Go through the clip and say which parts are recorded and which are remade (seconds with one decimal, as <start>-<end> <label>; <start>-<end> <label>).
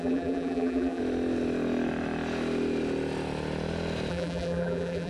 0.0-1.0 remade; 1.0-4.1 recorded; 4.1-5.1 remade